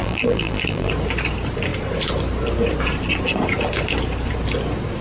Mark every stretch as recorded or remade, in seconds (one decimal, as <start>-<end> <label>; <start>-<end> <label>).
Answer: 0.0-0.9 remade; 0.9-5.0 recorded